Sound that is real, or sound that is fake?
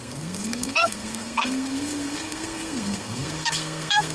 fake